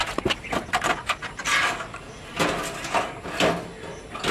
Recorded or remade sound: recorded